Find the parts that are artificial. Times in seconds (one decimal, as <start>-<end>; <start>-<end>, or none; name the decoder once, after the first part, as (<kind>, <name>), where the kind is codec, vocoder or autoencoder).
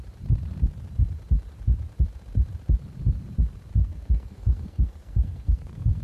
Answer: 3.8-6.0 (codec, SNAC)